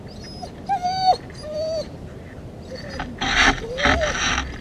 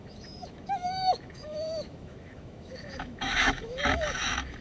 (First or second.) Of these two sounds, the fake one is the second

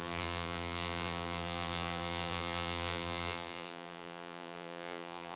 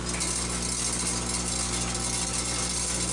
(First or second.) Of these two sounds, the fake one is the first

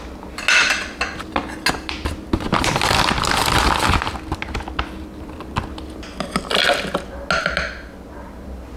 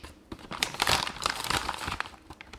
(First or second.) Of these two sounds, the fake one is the second